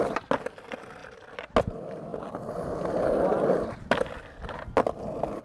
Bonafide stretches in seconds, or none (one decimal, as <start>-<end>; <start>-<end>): 0.0-5.4

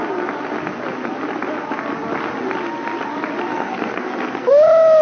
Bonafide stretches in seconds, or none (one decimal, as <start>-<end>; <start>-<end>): 0.0-3.5; 4.5-5.0

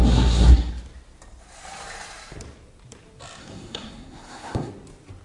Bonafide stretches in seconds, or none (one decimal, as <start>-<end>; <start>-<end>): 0.7-3.4; 4.7-5.2

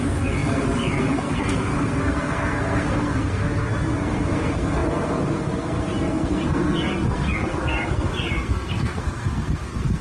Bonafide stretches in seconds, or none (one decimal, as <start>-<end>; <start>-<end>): none